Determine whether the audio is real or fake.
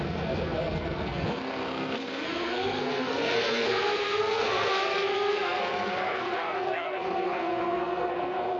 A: fake